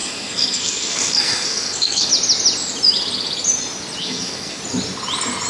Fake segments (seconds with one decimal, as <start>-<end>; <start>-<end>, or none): 0.0-2.1; 4.0-4.6